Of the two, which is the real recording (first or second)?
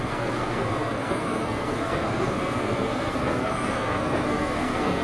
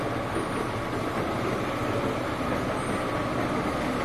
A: second